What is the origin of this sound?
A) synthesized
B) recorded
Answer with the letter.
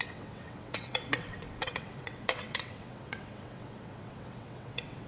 A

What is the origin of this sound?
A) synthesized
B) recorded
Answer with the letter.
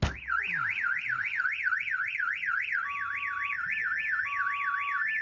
B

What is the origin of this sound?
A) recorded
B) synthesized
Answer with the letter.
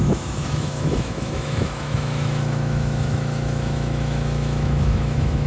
B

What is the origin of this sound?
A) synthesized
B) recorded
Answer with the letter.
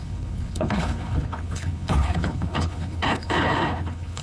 A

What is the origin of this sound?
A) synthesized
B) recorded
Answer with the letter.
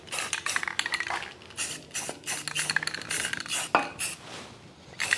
B